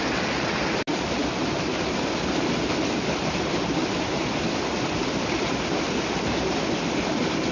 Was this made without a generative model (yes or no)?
yes